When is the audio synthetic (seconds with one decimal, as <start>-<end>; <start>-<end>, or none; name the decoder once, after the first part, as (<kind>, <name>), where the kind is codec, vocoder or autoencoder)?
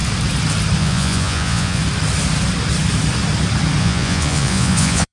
0.8-1.8 (vocoder, Vocos); 3.8-5.1